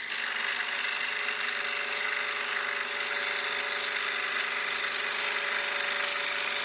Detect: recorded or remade recorded